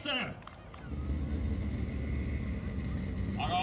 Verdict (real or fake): real